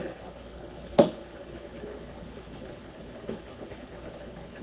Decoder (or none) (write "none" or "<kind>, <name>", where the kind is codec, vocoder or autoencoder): codec, HILCodec